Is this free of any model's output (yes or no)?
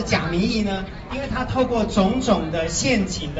yes